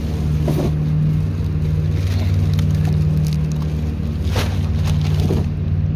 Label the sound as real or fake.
real